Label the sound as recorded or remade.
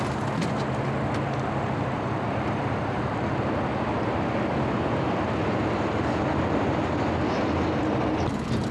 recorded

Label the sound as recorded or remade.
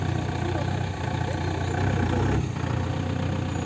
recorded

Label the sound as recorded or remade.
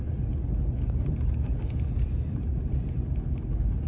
recorded